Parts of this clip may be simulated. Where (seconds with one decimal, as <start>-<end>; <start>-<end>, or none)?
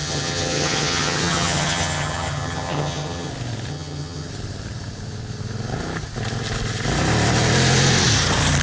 0.0-3.3; 3.7-4.3